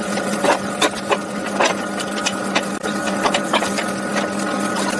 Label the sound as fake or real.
real